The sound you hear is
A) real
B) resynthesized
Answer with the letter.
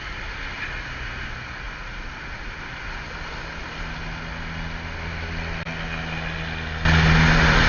A